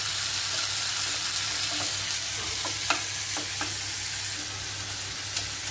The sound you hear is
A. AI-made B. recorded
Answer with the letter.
B